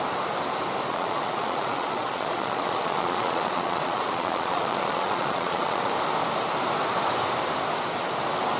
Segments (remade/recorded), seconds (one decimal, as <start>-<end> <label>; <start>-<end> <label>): 0.0-0.9 recorded; 0.9-5.9 remade; 5.9-8.6 recorded